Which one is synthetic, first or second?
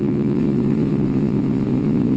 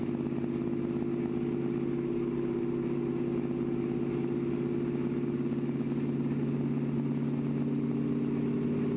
first